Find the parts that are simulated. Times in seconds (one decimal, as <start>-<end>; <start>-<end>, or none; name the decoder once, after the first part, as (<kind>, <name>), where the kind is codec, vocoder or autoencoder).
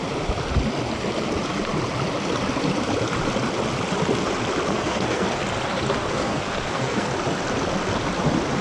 4.7-5.4 (codec, SNAC); 6.1-7.1